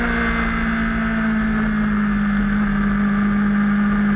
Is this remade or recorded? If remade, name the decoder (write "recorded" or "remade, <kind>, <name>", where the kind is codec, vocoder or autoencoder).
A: recorded